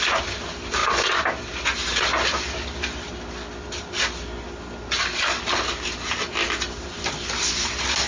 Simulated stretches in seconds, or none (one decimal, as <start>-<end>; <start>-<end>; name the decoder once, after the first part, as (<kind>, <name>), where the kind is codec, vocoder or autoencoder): none